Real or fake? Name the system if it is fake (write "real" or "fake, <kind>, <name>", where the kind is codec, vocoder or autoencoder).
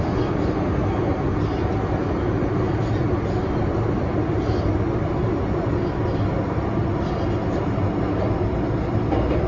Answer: real